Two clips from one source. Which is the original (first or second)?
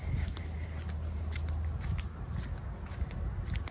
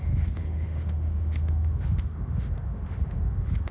first